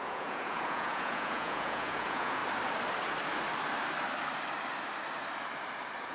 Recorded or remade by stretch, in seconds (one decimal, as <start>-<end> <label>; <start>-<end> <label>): 0.0-2.4 remade; 2.4-6.1 recorded